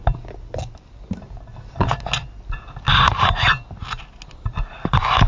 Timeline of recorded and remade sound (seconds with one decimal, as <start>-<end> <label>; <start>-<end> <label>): 0.0-5.3 recorded